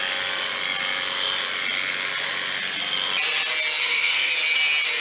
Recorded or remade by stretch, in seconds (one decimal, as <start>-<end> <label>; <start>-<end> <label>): 0.0-3.8 recorded; 3.8-4.3 remade; 4.3-5.0 recorded